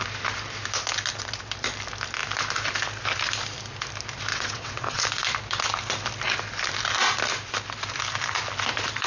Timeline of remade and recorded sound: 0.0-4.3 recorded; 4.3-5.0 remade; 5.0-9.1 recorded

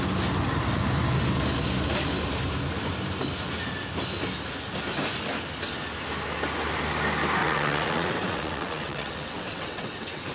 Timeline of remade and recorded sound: 0.0-7.4 recorded; 7.4-10.3 remade

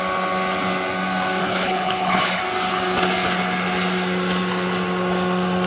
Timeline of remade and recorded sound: 0.0-1.4 recorded; 1.4-2.4 remade; 2.4-5.7 recorded

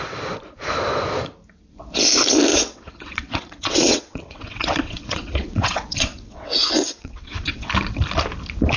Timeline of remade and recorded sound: 0.0-2.5 recorded; 2.5-7.7 remade; 7.7-8.8 recorded